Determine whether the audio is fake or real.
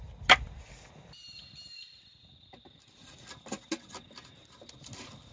real